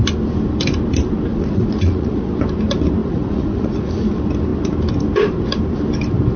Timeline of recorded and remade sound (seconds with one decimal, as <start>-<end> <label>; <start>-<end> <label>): 0.0-1.3 recorded; 1.3-2.3 remade; 2.3-3.0 recorded; 3.0-4.1 remade; 4.1-6.4 recorded